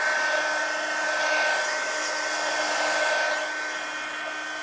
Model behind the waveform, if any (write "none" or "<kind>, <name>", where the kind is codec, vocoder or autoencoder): none